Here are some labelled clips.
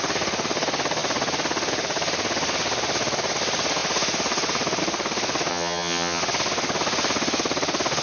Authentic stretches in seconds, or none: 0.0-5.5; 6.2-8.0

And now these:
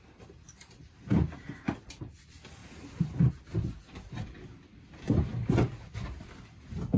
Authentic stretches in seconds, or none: 0.0-2.6; 3.3-4.7; 5.7-7.0

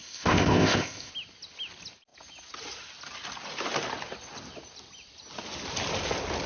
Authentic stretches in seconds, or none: 1.1-6.5

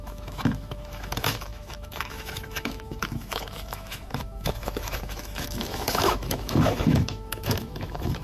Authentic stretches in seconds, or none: none

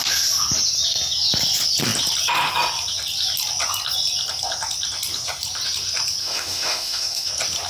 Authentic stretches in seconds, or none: 0.0-6.2; 7.3-7.7

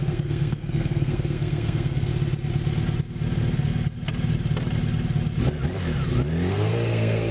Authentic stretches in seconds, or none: 2.1-6.5

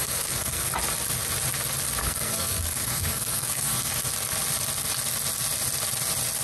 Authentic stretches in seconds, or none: 0.7-2.0; 3.9-6.4